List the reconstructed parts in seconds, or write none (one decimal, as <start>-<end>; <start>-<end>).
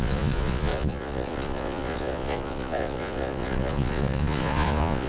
0.0-5.1